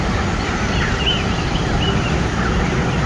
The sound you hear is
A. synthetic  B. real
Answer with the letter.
B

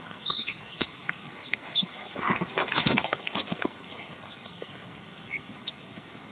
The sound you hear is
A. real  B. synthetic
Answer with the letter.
B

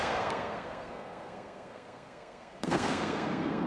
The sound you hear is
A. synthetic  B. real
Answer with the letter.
A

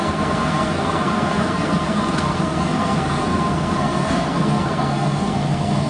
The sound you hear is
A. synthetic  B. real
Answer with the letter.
A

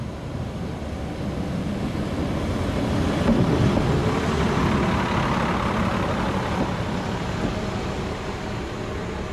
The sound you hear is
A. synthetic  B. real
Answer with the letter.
B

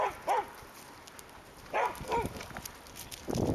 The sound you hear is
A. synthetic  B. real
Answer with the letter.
B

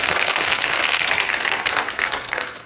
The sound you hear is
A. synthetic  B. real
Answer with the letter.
A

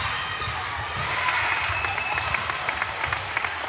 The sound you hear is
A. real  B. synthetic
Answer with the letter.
A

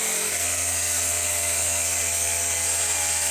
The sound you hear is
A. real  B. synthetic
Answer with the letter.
B